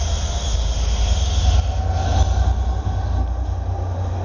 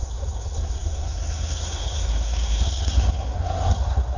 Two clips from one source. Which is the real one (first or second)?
first